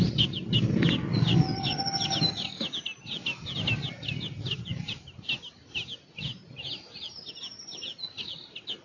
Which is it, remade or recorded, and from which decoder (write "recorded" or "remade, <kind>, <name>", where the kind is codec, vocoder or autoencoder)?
recorded